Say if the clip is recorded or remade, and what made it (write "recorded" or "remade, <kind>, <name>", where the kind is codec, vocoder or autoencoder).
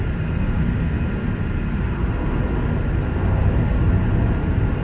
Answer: recorded